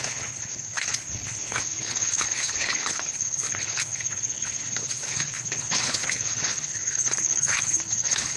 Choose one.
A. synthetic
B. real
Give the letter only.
A